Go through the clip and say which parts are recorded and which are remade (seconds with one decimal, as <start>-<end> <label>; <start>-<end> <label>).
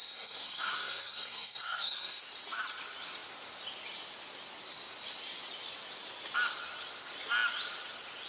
0.0-2.2 remade; 2.2-8.3 recorded